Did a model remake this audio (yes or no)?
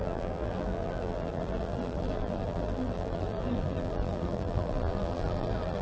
yes